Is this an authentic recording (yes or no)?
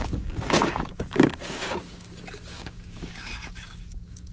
no